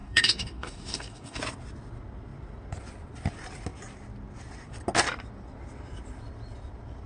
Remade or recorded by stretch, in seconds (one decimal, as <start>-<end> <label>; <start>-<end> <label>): 0.0-1.4 remade; 1.4-7.1 recorded